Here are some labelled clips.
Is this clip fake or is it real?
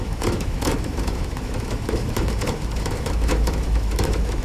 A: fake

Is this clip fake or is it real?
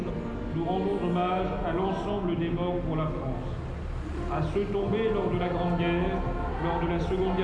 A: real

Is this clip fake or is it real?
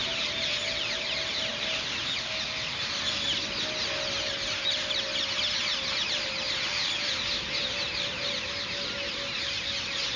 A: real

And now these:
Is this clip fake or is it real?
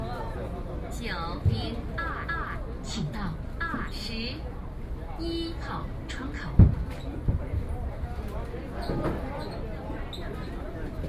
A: real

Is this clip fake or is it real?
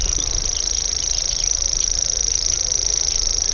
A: real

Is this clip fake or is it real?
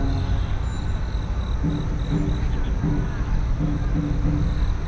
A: real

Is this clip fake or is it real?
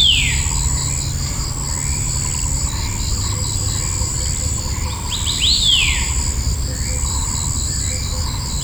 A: real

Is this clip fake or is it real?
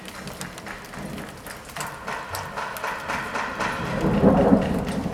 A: real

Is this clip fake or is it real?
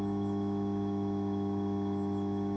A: fake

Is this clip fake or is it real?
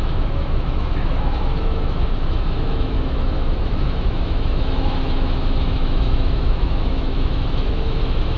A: fake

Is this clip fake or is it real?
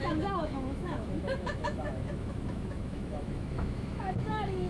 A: fake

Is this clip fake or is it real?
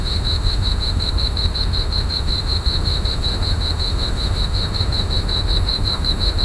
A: fake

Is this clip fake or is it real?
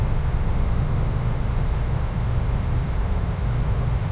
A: fake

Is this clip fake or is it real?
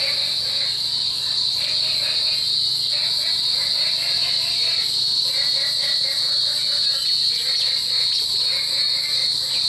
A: real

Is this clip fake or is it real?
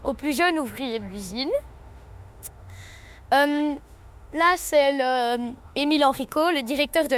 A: fake